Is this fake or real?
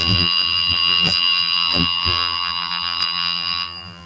fake